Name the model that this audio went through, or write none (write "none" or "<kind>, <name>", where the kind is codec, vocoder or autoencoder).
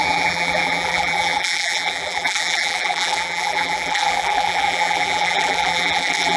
vocoder, BigVGAN v2